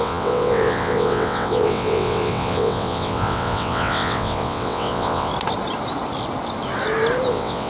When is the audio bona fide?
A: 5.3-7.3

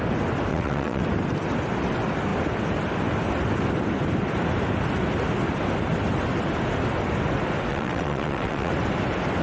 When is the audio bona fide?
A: 0.0-0.5; 1.0-7.7; 8.7-9.4